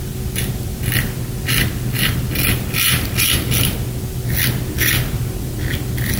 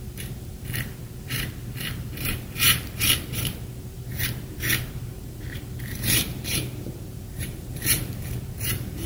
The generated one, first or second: second